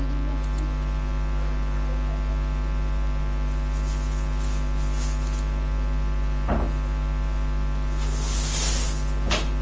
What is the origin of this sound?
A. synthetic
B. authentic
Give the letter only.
B